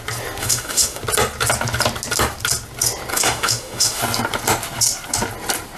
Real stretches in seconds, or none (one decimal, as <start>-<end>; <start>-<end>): 0.0-0.4; 1.0-3.1; 4.0-5.8